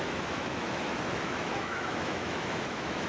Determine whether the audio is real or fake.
fake